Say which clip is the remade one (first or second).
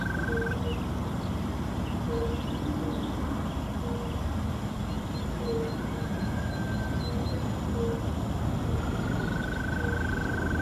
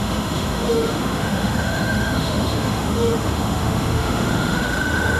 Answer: second